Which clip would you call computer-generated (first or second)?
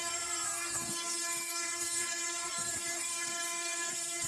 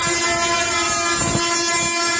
first